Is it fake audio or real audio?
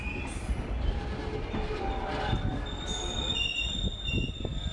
real